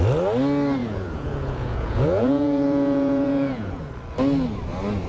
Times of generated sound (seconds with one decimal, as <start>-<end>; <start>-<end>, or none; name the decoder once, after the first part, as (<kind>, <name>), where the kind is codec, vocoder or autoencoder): 0.8-3.9 (vocoder, Vocos)

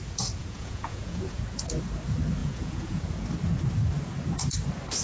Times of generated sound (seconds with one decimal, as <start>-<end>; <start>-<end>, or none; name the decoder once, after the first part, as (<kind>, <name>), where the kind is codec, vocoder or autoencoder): 0.4-1.4 (vocoder, Vocos); 2.4-3.0

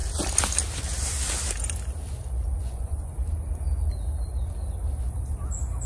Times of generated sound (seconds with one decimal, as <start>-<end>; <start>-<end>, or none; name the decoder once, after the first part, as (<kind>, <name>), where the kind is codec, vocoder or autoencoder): 2.6-3.1 (vocoder, Vocos)

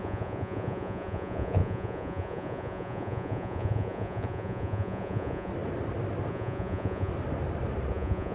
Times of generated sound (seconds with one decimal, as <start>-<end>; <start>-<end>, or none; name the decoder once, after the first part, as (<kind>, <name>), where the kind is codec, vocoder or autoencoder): 0.0-5.5 (vocoder, Vocos); 6.3-7.1; 7.9-8.3

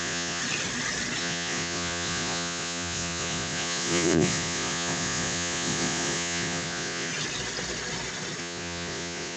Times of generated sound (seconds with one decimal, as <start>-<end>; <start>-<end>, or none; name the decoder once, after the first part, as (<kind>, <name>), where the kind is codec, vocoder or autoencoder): 0.0-0.4 (vocoder, Vocos); 1.2-7.1; 8.4-9.4